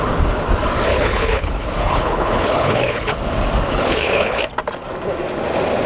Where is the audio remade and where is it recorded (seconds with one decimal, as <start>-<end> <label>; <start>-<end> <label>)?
0.0-0.9 recorded; 0.9-3.2 remade; 3.2-3.7 recorded; 3.7-4.4 remade; 4.4-5.9 recorded